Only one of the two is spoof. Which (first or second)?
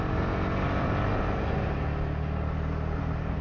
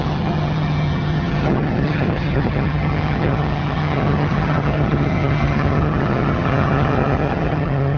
second